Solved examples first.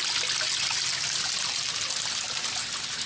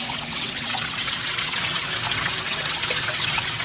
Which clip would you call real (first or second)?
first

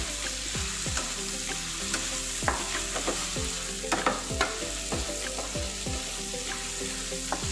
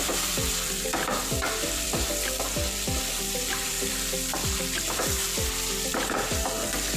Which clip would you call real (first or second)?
first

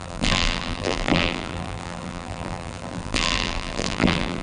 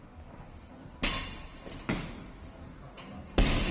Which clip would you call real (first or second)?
second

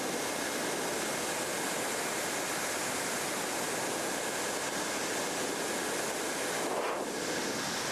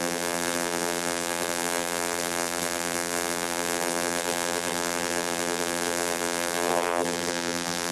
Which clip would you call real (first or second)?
first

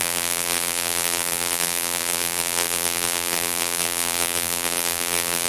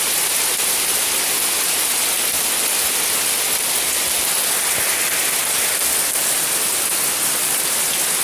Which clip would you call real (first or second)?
second